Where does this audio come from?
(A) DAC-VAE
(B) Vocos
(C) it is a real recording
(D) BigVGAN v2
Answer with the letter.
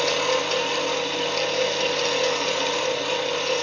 C